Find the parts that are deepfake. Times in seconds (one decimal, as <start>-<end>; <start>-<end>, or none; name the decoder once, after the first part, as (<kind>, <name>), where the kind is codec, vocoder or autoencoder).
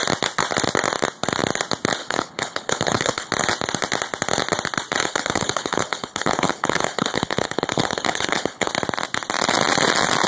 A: 2.0-3.3 (codec, HILCodec); 5.0-8.7